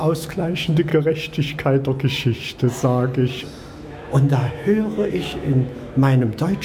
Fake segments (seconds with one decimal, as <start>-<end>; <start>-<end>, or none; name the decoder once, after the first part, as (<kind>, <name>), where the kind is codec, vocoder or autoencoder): 0.0-0.9 (autoencoder, DAC-VAE); 3.8-6.6